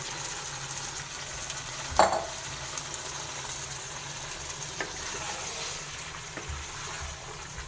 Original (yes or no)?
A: yes